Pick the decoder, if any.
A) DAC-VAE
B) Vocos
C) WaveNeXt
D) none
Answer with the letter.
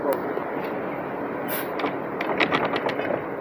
D